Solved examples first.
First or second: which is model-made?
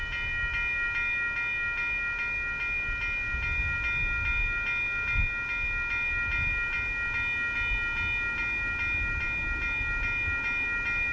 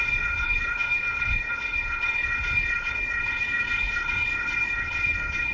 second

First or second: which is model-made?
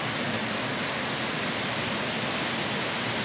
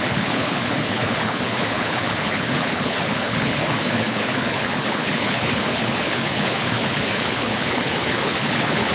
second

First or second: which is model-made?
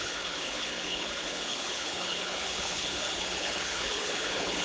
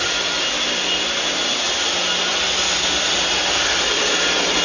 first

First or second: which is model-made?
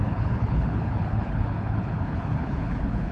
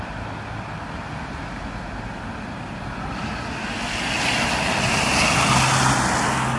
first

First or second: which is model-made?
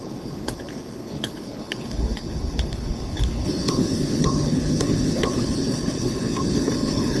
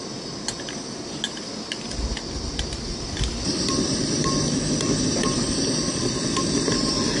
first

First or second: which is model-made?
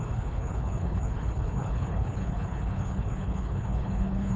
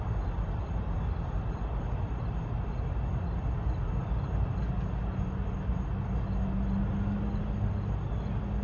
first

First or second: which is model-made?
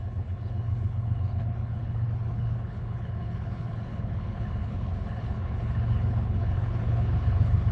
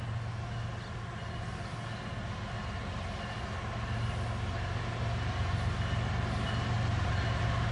first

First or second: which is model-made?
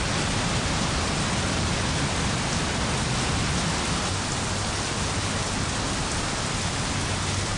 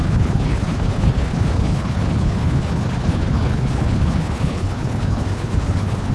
second